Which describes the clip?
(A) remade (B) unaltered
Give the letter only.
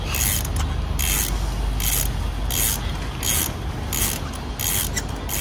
B